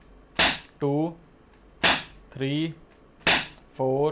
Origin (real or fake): real